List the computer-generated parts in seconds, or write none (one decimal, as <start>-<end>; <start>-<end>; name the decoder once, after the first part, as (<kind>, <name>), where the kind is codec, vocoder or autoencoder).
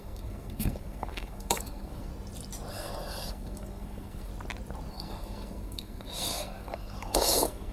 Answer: 0.0-2.1 (codec, SNAC); 2.7-4.3; 4.9-7.7